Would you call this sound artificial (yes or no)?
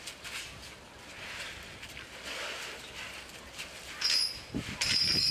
no